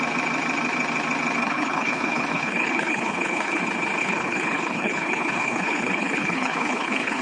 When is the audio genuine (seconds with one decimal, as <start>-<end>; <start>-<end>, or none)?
0.0-1.4; 3.6-4.0